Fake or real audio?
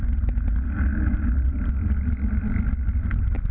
real